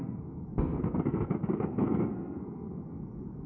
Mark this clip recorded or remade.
remade